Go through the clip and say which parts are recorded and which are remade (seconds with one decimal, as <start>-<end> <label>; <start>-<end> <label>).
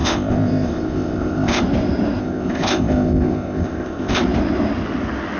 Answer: 0.0-1.6 remade; 1.6-2.2 recorded; 2.2-4.2 remade; 4.2-5.4 recorded